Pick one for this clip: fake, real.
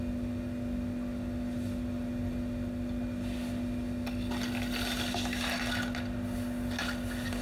real